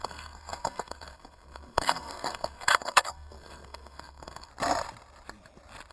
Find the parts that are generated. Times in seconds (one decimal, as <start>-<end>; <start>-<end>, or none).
0.0-4.5